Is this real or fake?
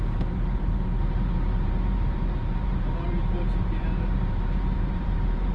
fake